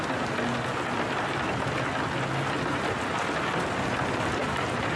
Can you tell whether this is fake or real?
real